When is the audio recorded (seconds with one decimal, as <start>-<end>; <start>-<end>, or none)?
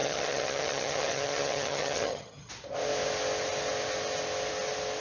2.5-5.0